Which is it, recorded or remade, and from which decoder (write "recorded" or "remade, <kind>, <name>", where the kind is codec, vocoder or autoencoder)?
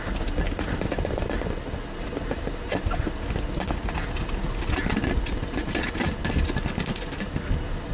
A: recorded